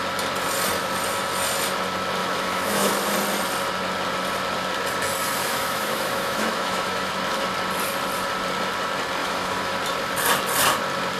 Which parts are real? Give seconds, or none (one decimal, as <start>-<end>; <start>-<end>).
0.0-2.2; 2.9-5.4; 7.1-9.2; 9.7-11.2